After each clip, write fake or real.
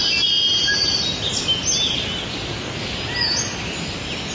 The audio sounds real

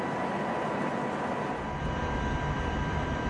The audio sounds real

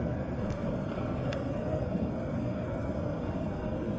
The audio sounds fake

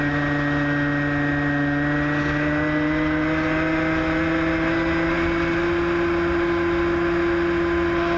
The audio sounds real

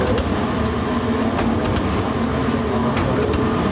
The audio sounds real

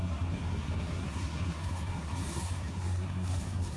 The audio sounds fake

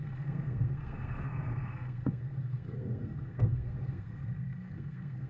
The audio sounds fake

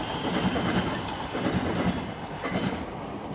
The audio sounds real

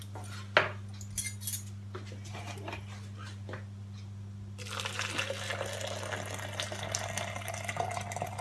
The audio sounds real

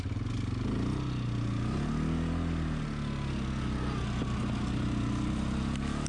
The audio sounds real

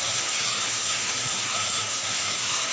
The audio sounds fake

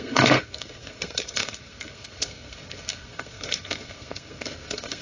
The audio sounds fake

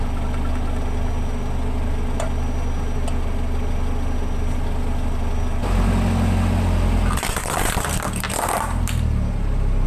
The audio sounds real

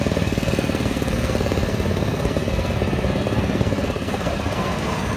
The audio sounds fake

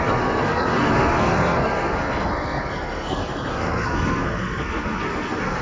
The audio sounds fake